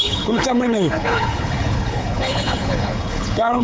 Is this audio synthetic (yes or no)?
yes